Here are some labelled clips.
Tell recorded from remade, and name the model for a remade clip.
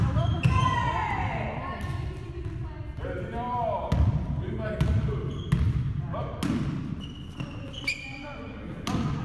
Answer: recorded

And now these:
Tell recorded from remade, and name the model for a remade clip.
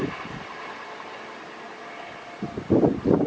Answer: recorded